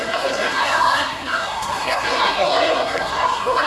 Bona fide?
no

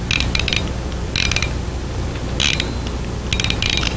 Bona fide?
yes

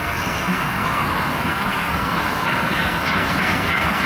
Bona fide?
no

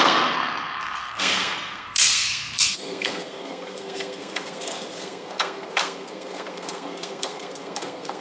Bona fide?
no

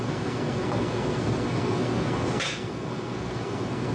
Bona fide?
no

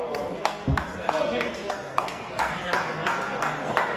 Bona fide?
no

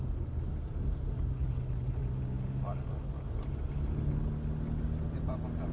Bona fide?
yes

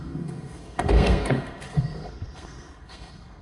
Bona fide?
no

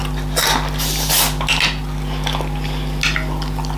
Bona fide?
yes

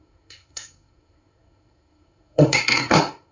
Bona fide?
no